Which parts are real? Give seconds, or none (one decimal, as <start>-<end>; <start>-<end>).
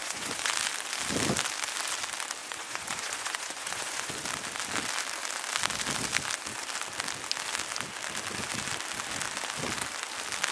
0.5-2.4; 4.1-10.5